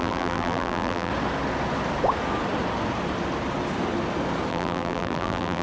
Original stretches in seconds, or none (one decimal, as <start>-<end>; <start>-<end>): 1.1-4.5